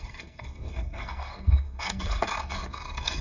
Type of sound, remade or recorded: remade